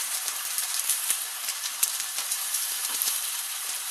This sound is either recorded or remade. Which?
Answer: remade